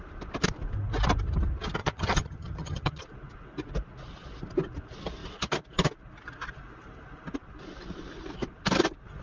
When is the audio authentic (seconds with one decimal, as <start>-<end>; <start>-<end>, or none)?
0.0-1.8; 3.0-9.2